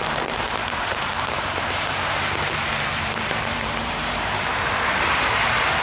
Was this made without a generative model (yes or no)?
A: no